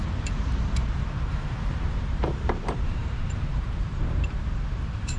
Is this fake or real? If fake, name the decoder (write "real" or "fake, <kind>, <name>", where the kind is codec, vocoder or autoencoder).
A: fake, vocoder, BigVGAN v2